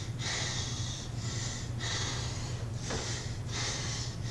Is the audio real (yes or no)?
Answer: yes